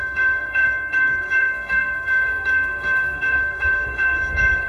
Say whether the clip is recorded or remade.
remade